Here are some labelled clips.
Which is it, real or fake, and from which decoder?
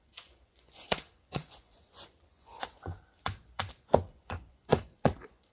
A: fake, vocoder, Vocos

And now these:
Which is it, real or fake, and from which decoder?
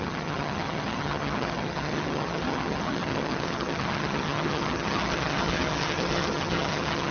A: fake, vocoder, HiFi-GAN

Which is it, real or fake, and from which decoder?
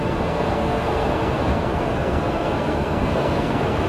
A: fake, codec, SNAC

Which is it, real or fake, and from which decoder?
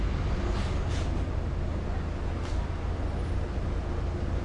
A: real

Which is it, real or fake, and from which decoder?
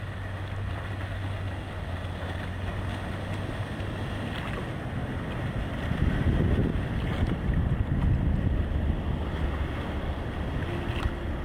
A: real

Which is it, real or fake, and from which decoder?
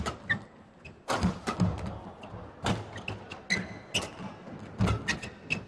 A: real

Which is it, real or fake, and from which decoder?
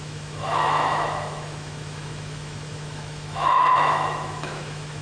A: fake, autoencoder, DAC-VAE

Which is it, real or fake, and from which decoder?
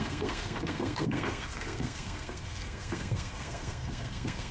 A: fake, codec, SNAC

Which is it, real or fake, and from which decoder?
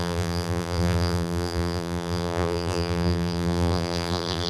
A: fake, vocoder, BigVGAN v2